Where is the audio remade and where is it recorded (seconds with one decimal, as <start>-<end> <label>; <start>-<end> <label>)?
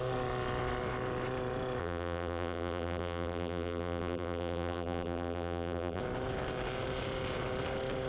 0.0-1.8 recorded; 1.8-6.0 remade; 6.0-8.1 recorded